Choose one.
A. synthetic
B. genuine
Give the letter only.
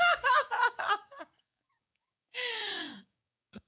A